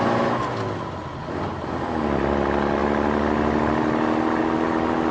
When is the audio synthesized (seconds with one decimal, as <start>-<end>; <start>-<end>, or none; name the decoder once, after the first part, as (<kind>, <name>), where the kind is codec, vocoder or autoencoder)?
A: none